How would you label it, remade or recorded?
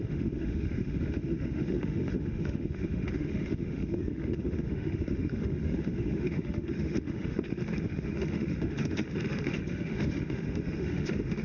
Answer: remade